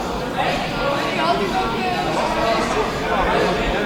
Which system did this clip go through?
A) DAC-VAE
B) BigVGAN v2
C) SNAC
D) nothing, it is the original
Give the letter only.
D